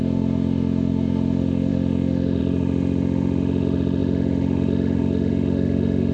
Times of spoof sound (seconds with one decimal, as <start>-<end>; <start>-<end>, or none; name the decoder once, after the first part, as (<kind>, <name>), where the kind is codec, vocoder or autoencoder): 0.0-6.1 (autoencoder, DAC-VAE)